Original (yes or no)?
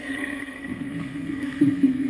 no